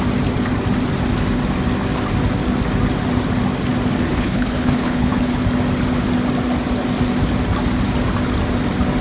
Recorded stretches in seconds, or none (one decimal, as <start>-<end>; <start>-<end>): 0.0-4.1; 5.1-9.0

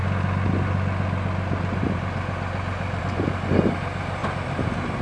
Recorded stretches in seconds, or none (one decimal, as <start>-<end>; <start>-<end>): 0.0-5.0